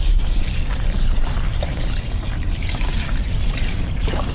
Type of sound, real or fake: fake